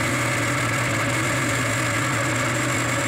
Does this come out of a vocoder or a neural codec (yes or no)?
no